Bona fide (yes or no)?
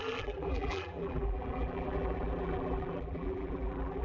no